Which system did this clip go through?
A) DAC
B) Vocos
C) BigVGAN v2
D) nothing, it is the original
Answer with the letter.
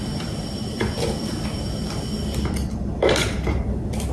C